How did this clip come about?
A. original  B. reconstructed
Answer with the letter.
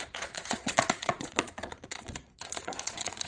B